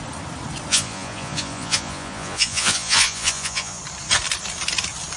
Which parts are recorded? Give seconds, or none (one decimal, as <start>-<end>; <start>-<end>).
0.0-0.7; 3.8-5.2